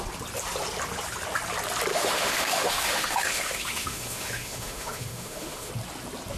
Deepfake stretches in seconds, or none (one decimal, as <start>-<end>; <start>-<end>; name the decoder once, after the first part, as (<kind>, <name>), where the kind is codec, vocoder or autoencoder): 1.9-5.7 (autoencoder, DAC-VAE)